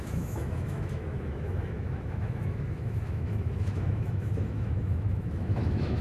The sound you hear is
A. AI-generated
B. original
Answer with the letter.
A